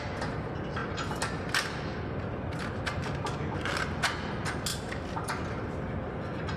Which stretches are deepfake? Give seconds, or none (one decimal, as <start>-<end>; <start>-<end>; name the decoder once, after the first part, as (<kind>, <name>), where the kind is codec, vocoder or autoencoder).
4.7-5.4 (vocoder, BigVGAN v2)